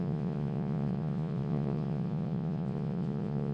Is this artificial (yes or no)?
yes